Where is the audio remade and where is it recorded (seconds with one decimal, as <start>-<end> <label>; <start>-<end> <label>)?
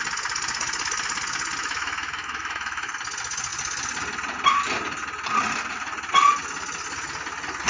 0.0-1.6 recorded; 1.6-2.9 remade; 2.9-7.7 recorded